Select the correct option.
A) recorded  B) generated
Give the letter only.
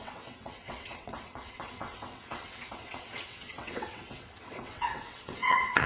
B